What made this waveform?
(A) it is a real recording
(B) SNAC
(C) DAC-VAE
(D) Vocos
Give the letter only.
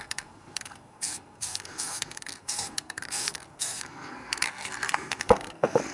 B